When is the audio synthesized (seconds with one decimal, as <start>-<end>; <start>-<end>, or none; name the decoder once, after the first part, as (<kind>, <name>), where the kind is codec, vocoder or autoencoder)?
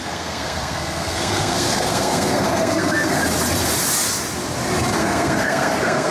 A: 0.0-3.2 (codec, SNAC); 5.0-6.1